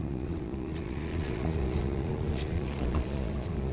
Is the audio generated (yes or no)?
yes